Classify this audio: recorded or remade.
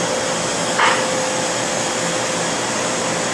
recorded